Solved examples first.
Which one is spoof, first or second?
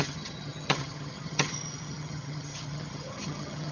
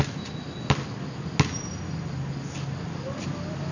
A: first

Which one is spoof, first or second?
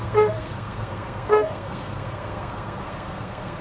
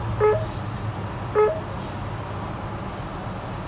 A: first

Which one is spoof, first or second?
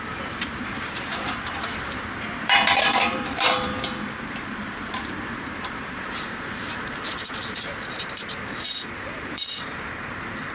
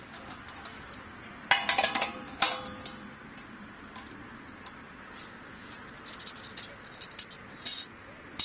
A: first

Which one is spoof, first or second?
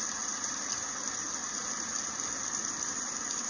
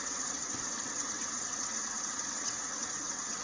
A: second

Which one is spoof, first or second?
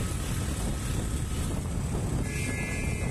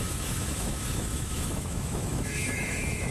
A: second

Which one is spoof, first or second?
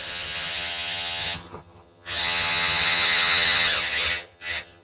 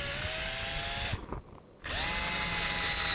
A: first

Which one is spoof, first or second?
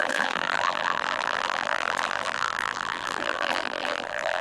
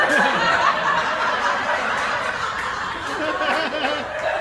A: first